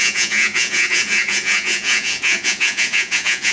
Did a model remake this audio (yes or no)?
yes